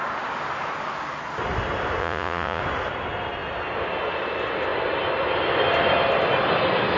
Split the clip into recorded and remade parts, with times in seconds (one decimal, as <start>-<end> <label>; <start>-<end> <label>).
0.0-2.0 recorded; 2.0-2.6 remade; 2.6-7.0 recorded